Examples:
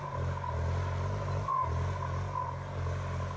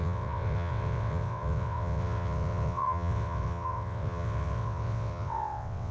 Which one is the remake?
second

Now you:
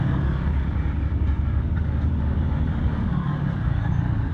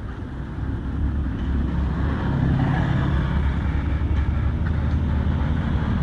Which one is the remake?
first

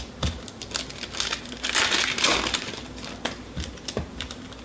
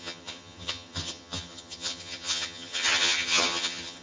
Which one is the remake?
second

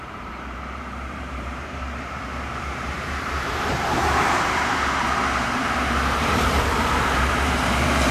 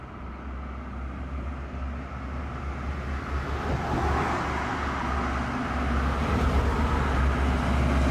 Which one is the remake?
first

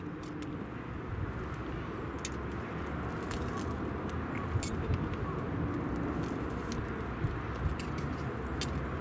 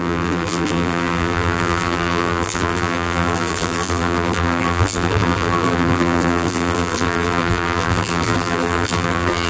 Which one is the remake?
second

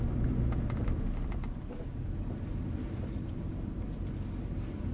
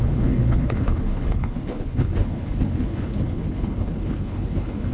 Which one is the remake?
second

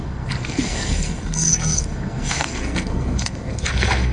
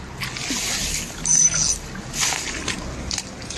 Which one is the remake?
first